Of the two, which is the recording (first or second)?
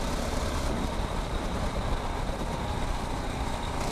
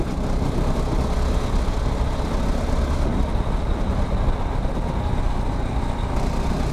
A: second